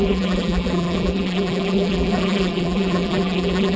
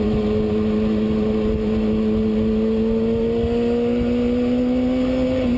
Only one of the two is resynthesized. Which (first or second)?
first